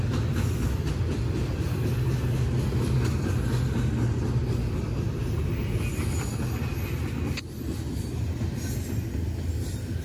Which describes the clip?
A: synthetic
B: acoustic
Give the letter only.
B